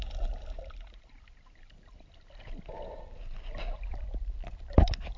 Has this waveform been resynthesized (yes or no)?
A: no